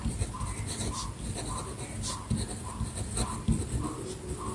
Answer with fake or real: real